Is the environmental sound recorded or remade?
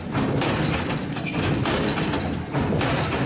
recorded